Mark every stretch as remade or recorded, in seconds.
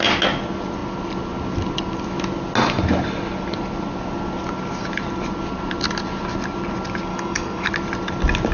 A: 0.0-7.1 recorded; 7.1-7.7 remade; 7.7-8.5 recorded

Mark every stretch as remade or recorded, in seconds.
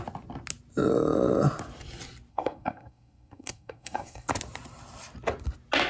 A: 0.0-2.3 recorded; 2.3-4.3 remade; 4.3-5.9 recorded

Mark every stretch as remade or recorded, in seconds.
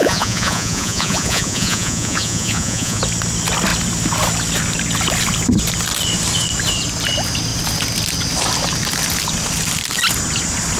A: 0.0-3.0 remade; 3.0-10.8 recorded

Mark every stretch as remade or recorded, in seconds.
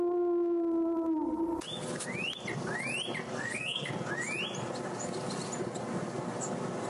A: 0.0-3.3 recorded; 3.3-3.9 remade; 3.9-6.9 recorded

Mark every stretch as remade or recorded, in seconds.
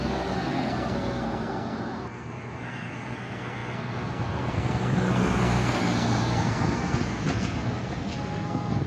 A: 0.0-8.9 remade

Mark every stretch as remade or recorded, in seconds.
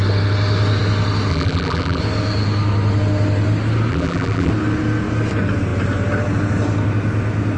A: 0.0-1.3 recorded; 1.3-2.0 remade; 2.0-3.9 recorded; 3.9-4.5 remade; 4.5-7.6 recorded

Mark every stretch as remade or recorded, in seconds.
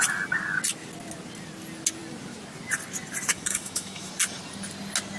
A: 0.0-3.3 recorded; 3.3-4.1 remade; 4.1-5.2 recorded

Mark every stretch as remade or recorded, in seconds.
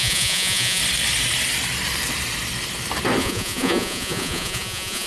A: 0.0-0.8 remade; 0.8-3.2 recorded; 3.2-5.1 remade